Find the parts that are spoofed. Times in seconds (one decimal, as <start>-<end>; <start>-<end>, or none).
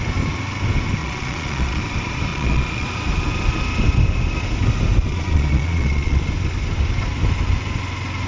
1.0-1.8; 2.3-2.9; 5.0-6.2